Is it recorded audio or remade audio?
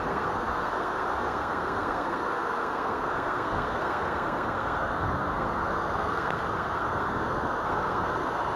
remade